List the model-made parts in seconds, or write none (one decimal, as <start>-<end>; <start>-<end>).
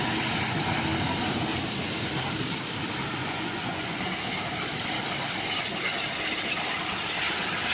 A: 3.2-4.0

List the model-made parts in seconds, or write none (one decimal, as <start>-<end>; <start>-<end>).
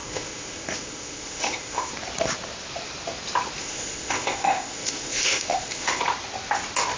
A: 0.0-1.9; 3.6-6.0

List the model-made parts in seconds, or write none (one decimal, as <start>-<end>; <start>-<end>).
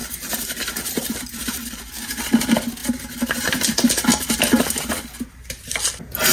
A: 0.0-1.7; 2.8-3.6; 4.1-4.9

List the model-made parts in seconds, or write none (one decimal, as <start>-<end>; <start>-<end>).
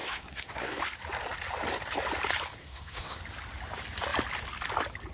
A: 0.0-0.8; 2.6-3.2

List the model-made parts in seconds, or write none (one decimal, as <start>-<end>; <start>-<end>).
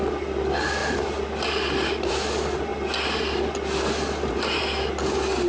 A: none